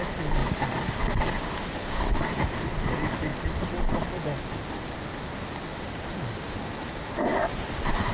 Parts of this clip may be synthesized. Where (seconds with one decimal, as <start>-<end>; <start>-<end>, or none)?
0.4-1.3